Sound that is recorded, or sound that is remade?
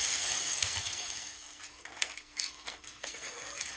remade